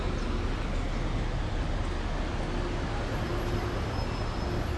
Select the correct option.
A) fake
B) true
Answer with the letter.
B